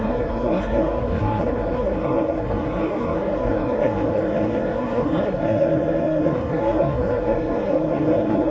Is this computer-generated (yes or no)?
yes